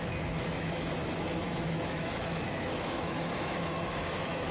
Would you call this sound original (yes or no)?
no